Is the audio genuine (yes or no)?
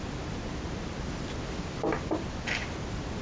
yes